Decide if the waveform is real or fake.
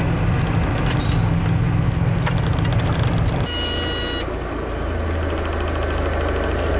real